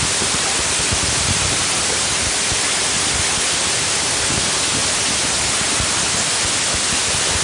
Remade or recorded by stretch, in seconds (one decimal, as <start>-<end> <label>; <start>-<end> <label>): 0.0-7.4 recorded